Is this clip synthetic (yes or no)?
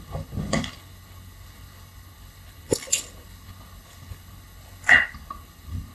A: yes